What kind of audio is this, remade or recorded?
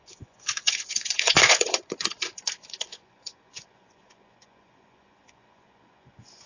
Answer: remade